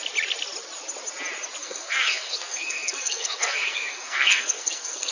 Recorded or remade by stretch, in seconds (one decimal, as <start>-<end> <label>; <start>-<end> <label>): 0.0-1.6 recorded; 1.6-5.1 remade